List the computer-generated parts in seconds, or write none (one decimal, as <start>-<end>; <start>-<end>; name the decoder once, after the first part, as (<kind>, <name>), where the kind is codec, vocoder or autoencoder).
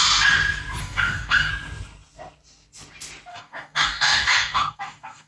0.8-1.5 (codec, DAC); 3.3-5.3